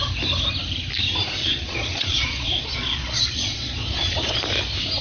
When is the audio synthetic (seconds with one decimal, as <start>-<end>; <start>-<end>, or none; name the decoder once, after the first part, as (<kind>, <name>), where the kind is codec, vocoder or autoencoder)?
1.4-4.4 (vocoder, Vocos)